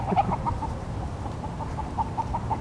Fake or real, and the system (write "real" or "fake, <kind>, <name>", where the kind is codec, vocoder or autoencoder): fake, vocoder, BigVGAN v2